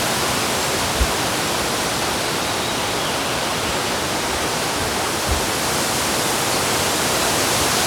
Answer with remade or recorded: recorded